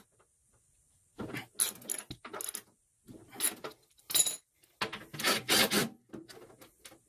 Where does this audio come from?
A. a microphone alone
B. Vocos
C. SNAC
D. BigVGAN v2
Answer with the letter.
A